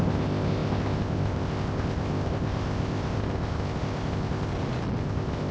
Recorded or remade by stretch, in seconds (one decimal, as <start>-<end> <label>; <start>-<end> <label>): 0.0-4.5 remade; 4.5-5.0 recorded; 5.0-5.5 remade